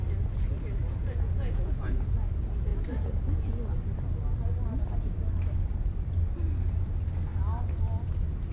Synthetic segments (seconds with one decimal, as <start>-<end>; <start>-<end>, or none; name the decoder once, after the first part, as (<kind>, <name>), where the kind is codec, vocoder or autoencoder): 0.8-1.9 (vocoder, Vocos)